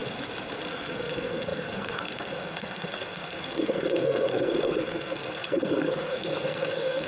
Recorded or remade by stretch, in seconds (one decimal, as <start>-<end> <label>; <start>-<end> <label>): 0.0-0.7 recorded; 0.7-7.1 remade